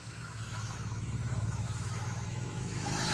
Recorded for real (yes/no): no